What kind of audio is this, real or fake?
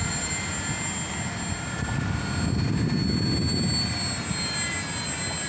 real